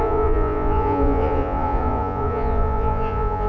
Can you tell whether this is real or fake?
fake